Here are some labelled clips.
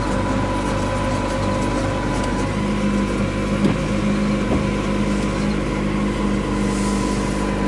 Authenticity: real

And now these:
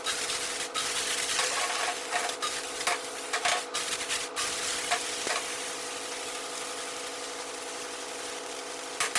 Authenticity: real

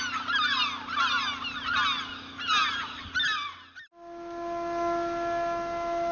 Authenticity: real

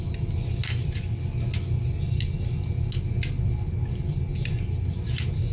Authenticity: real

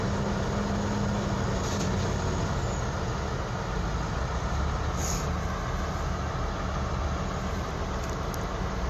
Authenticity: real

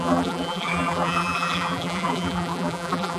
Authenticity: fake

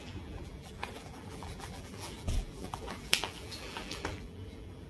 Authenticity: fake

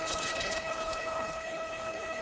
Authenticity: fake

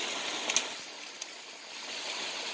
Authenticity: real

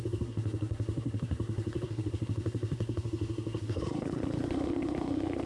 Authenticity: fake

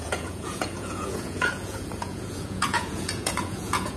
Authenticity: fake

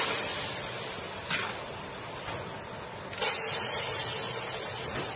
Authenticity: real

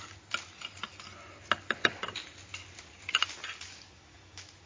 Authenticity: real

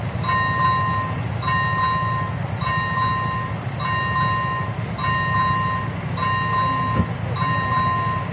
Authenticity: real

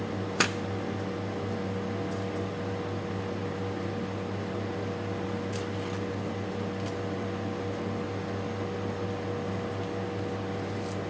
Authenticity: real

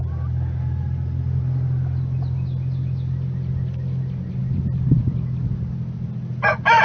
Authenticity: real